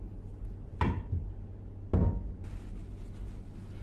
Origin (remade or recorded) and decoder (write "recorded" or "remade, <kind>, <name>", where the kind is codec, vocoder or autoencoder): recorded